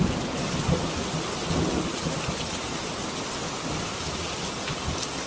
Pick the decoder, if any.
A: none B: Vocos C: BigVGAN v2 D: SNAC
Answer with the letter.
A